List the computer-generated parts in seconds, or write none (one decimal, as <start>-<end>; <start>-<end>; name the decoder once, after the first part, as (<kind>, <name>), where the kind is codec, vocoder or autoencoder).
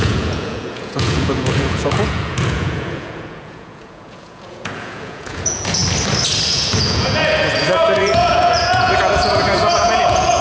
0.0-5.8 (vocoder, Vocos); 6.5-10.4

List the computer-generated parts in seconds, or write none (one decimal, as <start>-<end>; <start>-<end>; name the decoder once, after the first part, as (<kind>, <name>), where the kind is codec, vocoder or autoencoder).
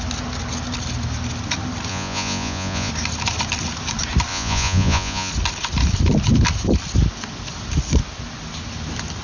1.9-2.9 (vocoder, Vocos); 4.3-5.3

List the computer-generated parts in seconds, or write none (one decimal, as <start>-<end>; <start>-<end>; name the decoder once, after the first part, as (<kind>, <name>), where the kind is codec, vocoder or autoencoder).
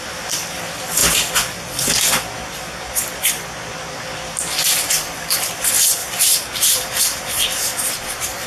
6.0-7.9 (vocoder, BigVGAN v2)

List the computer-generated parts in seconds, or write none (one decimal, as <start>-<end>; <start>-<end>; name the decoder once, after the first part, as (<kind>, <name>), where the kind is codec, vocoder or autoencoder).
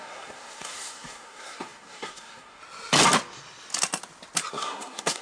0.0-2.6 (codec, SNAC); 4.5-5.2